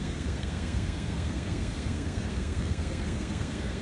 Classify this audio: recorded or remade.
remade